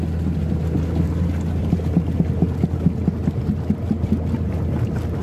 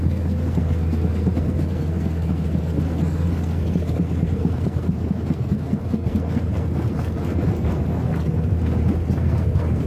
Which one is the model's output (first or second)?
second